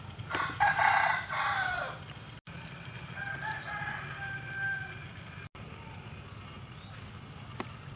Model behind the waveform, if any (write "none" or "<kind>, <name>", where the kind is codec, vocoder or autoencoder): none